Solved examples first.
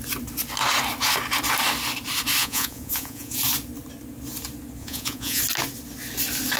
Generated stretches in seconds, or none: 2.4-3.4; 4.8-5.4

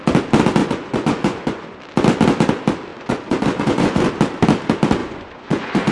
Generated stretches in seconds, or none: 0.6-1.8; 2.9-4.1; 5.0-5.9

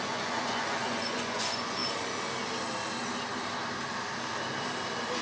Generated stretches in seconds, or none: 0.0-1.8

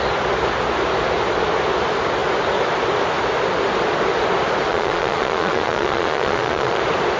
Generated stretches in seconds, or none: 4.7-6.8

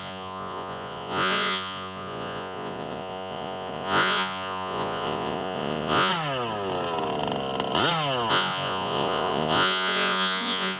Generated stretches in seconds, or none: 0.0-6.1; 8.3-10.8

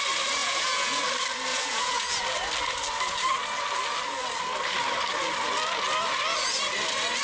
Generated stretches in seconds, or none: 0.4-1.0; 1.5-2.1

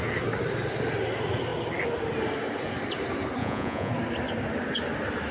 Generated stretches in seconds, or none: 3.4-3.9

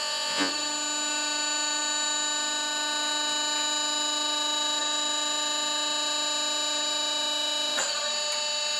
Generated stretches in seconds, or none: 0.0-0.5